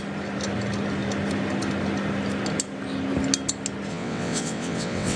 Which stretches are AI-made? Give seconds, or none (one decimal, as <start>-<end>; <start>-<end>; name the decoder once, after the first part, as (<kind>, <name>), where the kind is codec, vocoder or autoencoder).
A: 3.9-5.2 (vocoder, WaveNeXt)